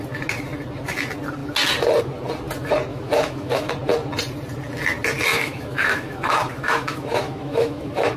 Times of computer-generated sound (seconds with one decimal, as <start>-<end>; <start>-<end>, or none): 2.9-3.7; 5.3-8.2